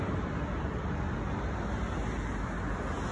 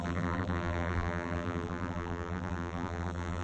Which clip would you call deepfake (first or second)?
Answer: second